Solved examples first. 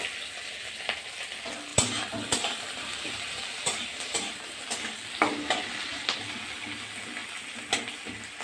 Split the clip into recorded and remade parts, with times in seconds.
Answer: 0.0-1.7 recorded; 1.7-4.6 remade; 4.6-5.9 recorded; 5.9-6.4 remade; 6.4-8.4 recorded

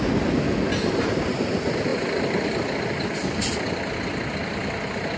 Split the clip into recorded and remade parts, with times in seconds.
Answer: 0.0-5.2 recorded

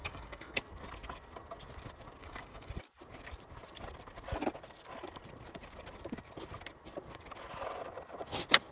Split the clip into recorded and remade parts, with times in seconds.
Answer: 0.0-0.6 remade; 0.6-2.2 recorded; 2.2-2.7 remade; 2.7-8.7 recorded

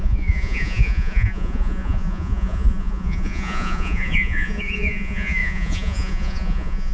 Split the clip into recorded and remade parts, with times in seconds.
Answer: 0.0-6.9 remade

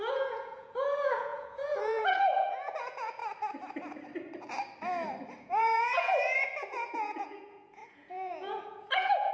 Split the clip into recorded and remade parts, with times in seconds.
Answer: 0.0-3.2 remade; 3.2-5.4 recorded; 5.4-9.3 remade